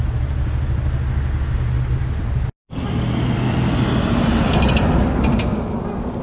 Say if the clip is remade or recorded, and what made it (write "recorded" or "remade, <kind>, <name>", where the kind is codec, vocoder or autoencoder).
recorded